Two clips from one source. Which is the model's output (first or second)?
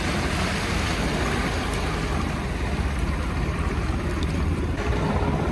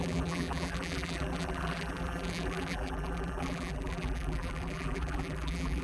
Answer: second